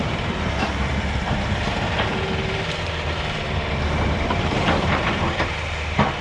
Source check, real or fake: fake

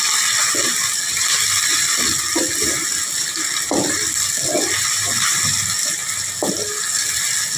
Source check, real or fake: real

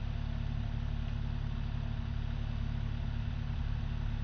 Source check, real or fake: real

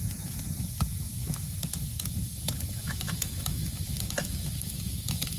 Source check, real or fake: fake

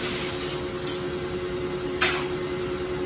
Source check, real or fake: real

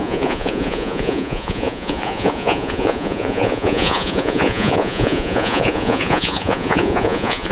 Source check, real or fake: fake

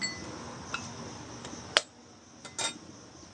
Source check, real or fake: real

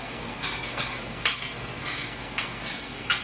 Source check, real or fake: fake